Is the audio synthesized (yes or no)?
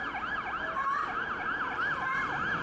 no